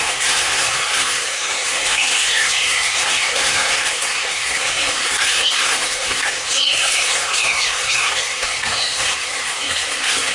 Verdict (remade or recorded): remade